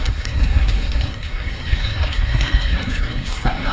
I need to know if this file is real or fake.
fake